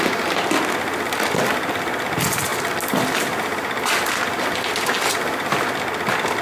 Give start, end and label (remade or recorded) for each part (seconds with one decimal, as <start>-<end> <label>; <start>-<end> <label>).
0.0-6.4 recorded